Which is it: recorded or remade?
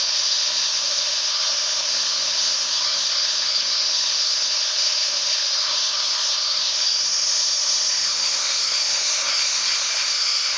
remade